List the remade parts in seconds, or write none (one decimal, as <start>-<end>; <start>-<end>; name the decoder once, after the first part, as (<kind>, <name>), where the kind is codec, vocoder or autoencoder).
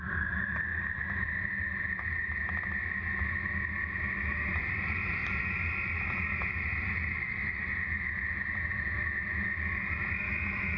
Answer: 0.7-2.3 (vocoder, BigVGAN v2)